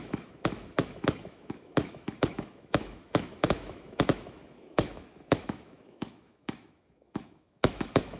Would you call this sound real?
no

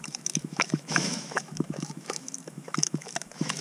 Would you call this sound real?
no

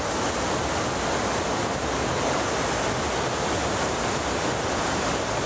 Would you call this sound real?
yes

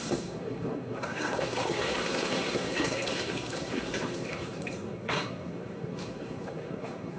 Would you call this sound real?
no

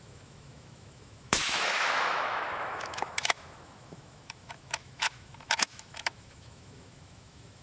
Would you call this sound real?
no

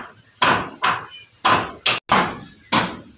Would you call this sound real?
yes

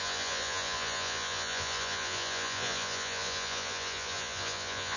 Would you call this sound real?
no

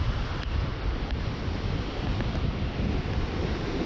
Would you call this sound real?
yes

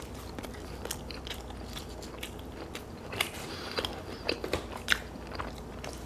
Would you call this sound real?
no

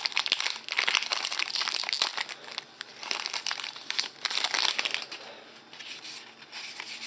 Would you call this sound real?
yes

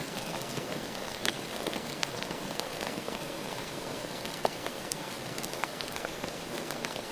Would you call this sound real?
no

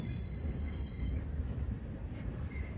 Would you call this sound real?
no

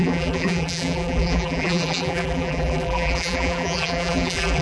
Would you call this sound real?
no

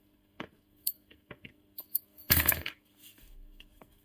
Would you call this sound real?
no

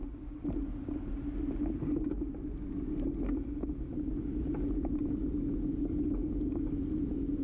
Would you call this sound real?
yes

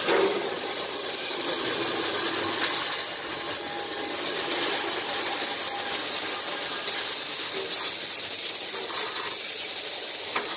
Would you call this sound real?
yes